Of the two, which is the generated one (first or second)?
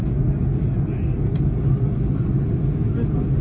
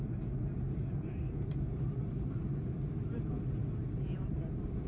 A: second